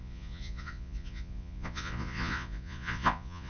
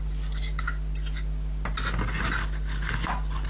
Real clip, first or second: second